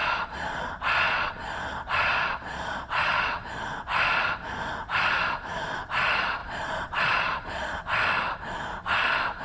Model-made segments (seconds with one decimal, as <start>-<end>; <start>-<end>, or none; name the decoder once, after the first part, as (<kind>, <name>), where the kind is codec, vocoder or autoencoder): 0.0-3.5 (vocoder, Vocos); 6.4-7.8